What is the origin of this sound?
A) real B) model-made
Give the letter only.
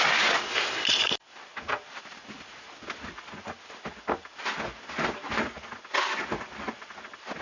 A